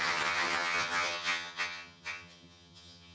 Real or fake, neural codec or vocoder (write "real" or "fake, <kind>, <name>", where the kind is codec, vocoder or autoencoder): fake, vocoder, HiFi-GAN